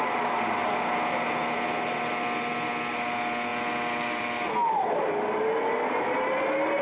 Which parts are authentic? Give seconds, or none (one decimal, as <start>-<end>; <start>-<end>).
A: 0.0-6.8